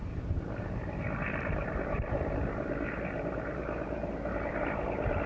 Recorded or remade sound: remade